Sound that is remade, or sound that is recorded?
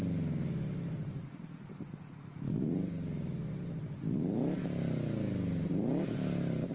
recorded